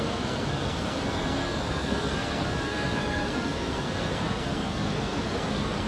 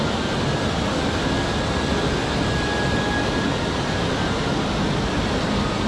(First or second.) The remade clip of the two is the first